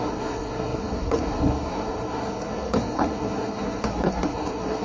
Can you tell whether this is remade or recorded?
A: remade